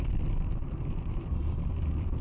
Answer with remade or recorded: remade